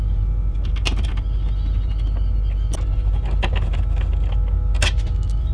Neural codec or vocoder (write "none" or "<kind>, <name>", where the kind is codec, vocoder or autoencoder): none